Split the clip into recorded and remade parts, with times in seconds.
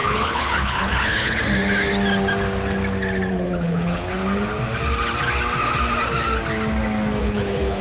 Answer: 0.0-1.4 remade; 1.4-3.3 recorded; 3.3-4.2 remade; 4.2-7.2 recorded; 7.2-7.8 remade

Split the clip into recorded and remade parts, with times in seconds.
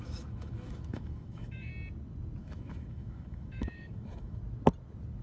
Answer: 0.0-1.7 remade; 1.7-2.4 recorded; 2.4-4.4 remade; 4.4-5.2 recorded